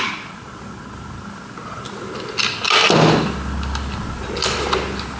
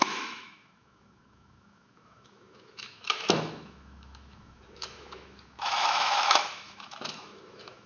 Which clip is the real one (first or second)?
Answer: first